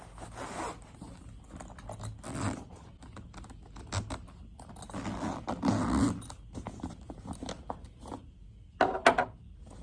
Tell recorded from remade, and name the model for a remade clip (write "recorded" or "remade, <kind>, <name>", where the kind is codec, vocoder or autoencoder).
recorded